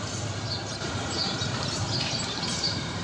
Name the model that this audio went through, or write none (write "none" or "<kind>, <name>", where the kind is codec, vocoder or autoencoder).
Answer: vocoder, BigVGAN v2